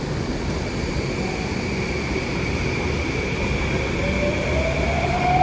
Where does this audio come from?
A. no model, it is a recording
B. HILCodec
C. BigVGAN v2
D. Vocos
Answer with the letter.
A